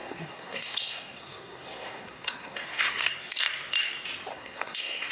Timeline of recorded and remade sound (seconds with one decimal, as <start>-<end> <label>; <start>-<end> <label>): 0.0-3.1 remade; 3.1-4.3 recorded; 4.3-5.1 remade